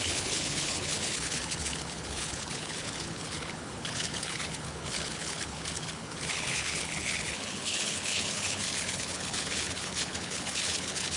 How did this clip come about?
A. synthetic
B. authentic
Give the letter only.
A